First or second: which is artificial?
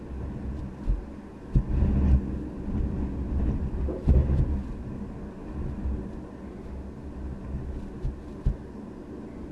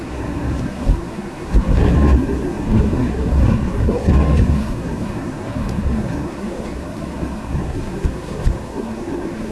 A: second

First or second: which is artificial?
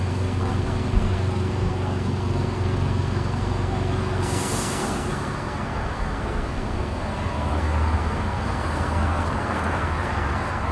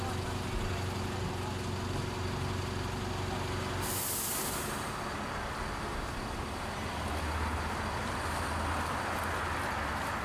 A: first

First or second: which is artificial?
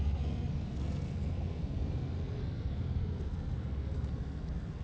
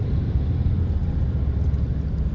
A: first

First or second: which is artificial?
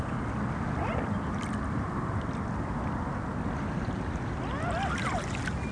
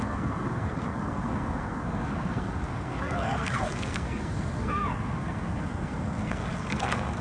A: second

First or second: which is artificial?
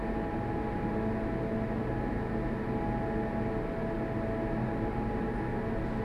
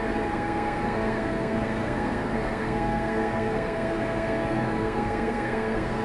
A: second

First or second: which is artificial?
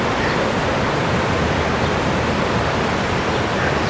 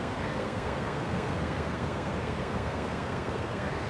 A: second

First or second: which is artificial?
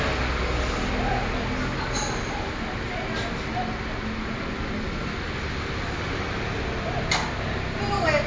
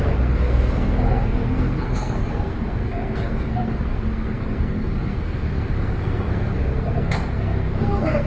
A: second